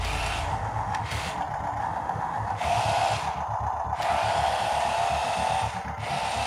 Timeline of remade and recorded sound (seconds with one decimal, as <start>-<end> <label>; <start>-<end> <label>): 0.0-0.5 recorded; 0.5-1.3 remade; 1.3-1.8 recorded; 1.8-2.8 remade; 2.8-6.5 recorded